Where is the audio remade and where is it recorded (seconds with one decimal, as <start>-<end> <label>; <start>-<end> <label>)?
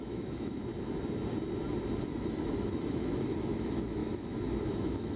0.0-0.6 remade; 0.6-2.0 recorded; 2.0-5.2 remade